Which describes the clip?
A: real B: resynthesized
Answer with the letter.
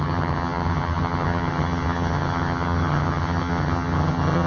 B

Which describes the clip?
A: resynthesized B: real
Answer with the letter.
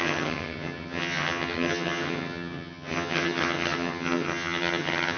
A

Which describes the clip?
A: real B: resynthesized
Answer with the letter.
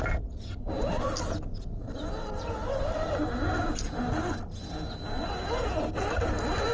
A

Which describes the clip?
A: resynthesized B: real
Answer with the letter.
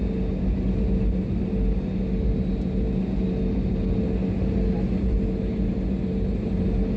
B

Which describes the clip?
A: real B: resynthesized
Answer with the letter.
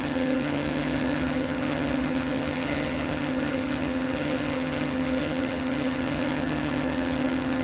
B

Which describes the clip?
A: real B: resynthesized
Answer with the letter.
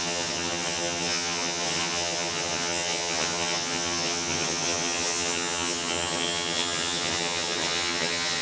B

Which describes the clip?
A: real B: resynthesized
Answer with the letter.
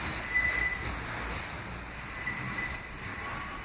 A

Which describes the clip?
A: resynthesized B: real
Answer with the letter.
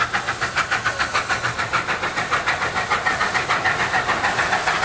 B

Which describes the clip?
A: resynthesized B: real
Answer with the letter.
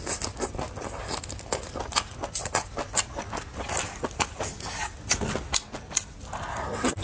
B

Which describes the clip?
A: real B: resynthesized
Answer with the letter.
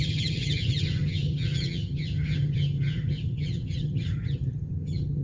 B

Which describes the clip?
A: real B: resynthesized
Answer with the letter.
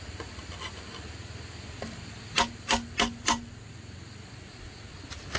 A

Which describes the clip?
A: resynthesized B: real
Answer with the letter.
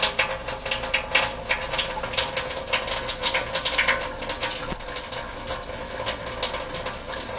B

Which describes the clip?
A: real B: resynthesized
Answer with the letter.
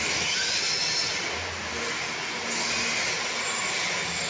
A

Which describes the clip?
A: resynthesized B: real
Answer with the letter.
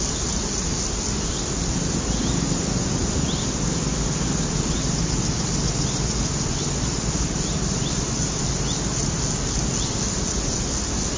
B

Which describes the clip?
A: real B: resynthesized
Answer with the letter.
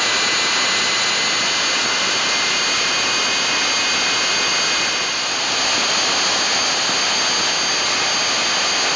A